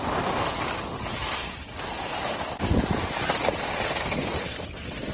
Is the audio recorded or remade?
recorded